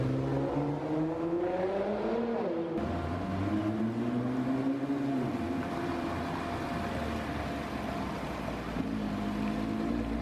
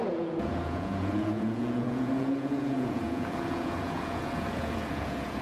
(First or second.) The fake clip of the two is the second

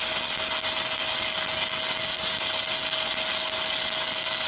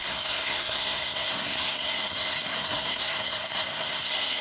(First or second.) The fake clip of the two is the second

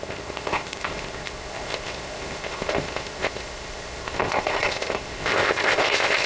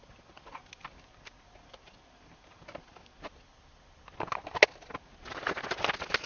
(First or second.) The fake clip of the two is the first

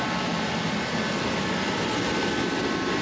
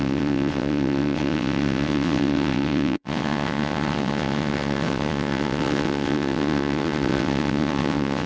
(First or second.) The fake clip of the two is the second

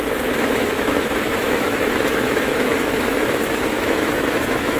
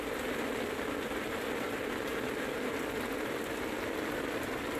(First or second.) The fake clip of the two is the first